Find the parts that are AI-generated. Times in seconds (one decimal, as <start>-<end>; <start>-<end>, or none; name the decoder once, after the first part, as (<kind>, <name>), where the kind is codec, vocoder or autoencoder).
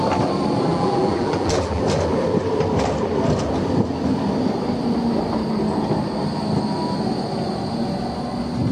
0.7-1.8 (vocoder, BigVGAN v2)